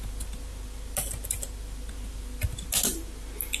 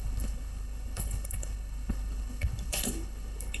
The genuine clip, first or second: first